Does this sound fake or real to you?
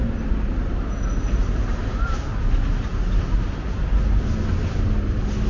real